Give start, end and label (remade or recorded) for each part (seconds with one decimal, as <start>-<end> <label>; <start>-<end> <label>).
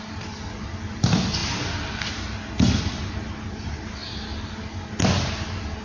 0.0-5.8 recorded